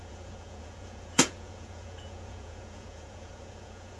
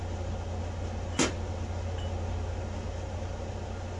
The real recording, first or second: second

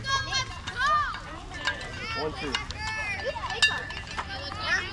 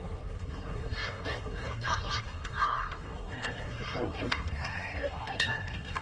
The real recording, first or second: first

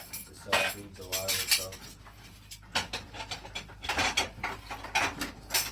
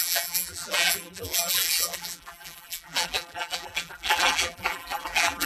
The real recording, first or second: first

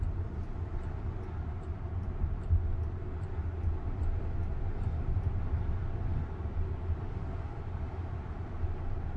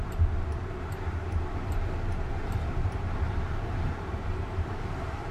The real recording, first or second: first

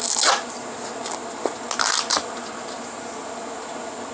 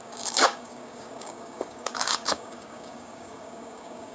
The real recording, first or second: first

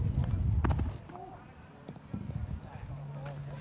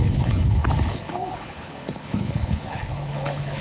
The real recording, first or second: first